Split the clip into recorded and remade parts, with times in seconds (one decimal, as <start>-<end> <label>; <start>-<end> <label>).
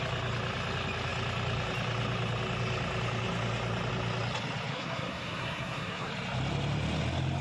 0.0-4.7 recorded; 4.7-6.1 remade; 6.1-7.4 recorded